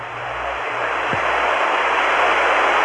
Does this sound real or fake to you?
real